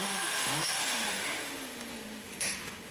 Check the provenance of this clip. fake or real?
fake